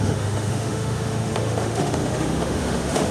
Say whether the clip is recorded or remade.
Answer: remade